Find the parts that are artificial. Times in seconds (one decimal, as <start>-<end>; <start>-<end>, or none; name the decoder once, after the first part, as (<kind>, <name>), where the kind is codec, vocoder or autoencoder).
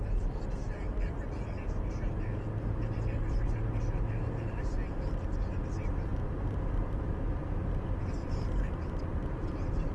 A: 6.1-7.2 (vocoder, BigVGAN v2); 8.2-9.5